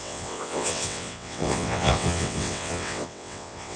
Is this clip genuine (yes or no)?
no